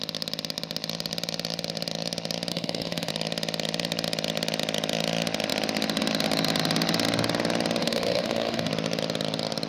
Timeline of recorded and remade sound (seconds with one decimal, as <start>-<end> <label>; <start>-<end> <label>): 0.0-2.5 recorded; 2.5-3.1 remade; 3.1-7.8 recorded; 7.8-8.7 remade; 8.7-9.7 recorded